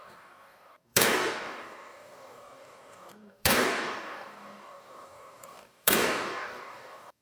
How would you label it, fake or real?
fake